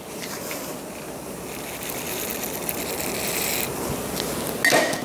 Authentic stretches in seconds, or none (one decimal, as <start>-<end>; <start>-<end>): 0.0-5.0